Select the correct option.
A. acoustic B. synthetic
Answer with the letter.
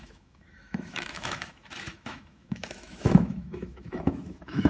B